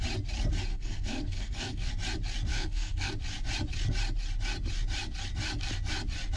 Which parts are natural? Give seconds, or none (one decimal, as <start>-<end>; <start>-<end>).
0.0-0.7; 1.9-2.5; 3.1-6.4